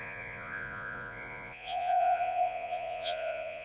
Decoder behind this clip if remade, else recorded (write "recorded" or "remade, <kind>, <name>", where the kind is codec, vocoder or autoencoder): remade, vocoder, Vocos